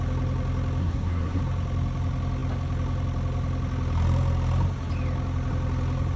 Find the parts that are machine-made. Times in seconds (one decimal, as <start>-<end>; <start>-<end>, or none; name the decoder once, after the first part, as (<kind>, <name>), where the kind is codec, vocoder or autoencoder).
0.8-1.4 (codec, SNAC)